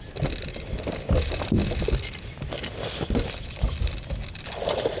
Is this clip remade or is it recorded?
recorded